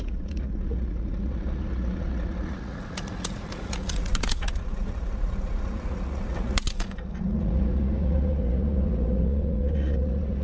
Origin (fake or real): fake